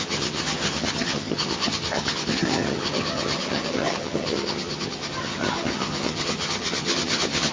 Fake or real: fake